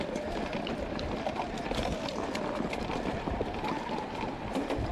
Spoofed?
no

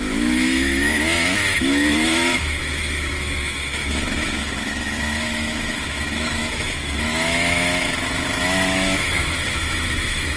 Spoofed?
yes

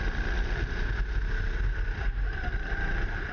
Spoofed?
no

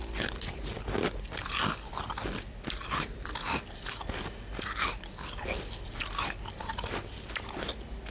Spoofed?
no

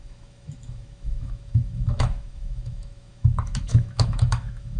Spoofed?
yes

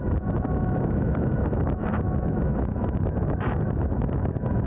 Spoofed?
yes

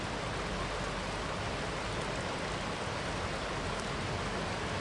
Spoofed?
no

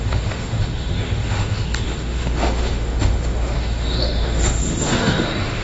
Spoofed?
yes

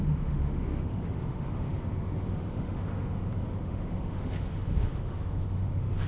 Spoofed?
yes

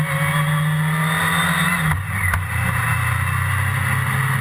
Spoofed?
no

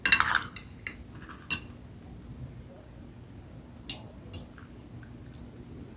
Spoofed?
no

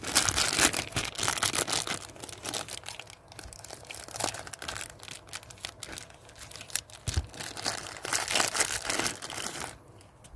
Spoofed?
no